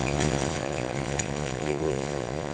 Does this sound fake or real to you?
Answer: fake